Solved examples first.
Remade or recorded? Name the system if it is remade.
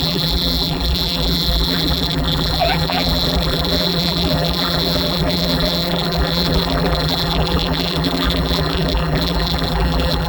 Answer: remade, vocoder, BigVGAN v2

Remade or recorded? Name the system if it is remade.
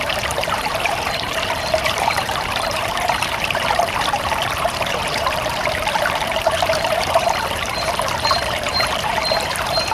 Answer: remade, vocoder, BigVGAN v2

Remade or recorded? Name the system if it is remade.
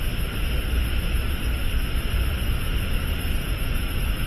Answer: recorded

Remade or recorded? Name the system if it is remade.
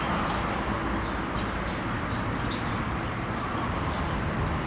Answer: recorded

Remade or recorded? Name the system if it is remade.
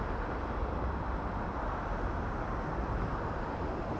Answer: remade, vocoder, BigVGAN v2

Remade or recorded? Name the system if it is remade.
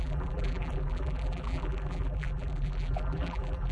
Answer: remade, vocoder, BigVGAN v2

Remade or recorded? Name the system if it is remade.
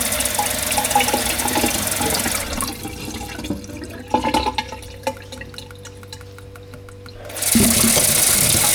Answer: recorded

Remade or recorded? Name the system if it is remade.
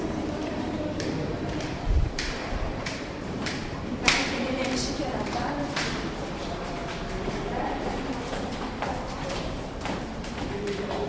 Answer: remade, vocoder, BigVGAN v2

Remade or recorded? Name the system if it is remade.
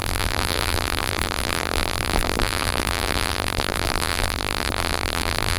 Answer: remade, vocoder, BigVGAN v2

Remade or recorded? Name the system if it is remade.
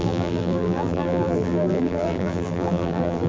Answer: remade, vocoder, BigVGAN v2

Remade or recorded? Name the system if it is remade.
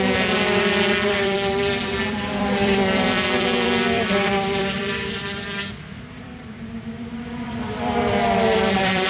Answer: remade, vocoder, BigVGAN v2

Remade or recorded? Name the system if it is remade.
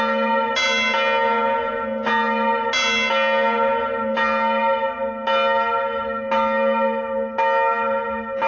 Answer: recorded